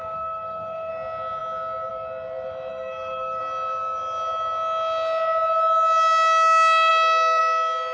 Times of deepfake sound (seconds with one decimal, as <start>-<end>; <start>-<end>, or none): 0.0-0.9; 2.7-3.4